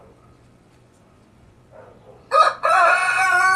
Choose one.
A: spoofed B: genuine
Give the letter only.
A